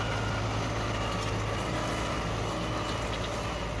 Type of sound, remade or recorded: recorded